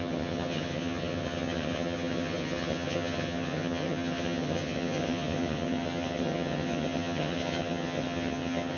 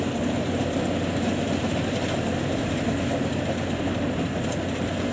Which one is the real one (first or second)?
second